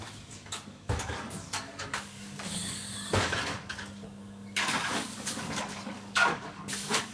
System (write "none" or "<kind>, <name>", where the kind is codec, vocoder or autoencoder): codec, DAC